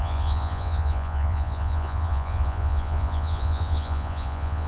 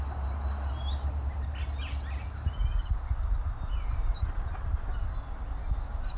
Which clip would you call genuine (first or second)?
second